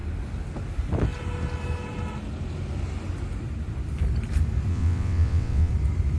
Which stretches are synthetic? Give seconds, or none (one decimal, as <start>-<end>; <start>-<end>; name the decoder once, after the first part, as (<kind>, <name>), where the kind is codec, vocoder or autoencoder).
4.7-5.7 (vocoder, WaveNeXt)